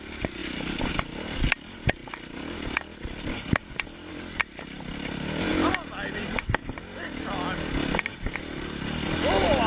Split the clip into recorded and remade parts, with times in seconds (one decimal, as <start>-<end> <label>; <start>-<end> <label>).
0.0-9.7 recorded